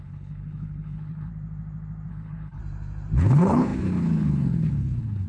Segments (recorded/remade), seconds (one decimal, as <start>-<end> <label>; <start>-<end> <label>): 0.0-1.3 remade; 1.3-2.1 recorded; 2.1-2.6 remade; 2.6-3.2 recorded; 3.2-5.3 remade